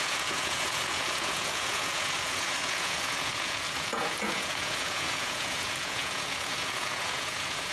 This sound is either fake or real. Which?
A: fake